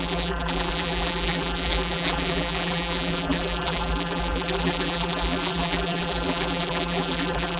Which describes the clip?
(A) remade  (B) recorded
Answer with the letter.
A